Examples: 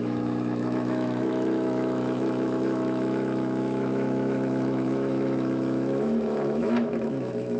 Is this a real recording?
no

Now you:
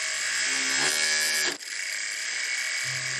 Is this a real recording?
yes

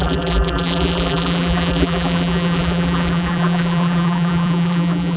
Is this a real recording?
no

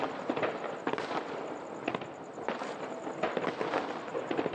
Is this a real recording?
yes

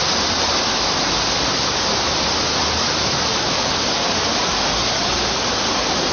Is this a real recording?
yes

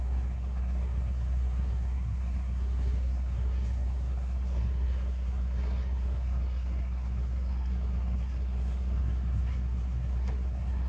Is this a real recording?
no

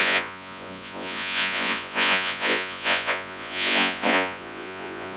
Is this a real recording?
no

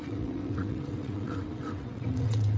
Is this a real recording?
no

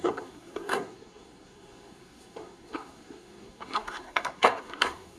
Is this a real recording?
no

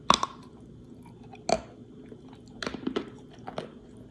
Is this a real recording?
yes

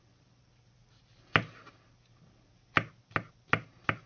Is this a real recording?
yes